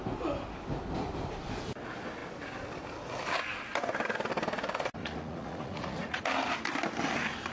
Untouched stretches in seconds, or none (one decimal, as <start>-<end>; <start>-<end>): 0.0-5.0; 6.2-7.5